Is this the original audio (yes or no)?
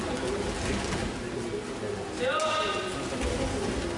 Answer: yes